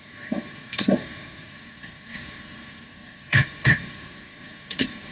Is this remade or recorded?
remade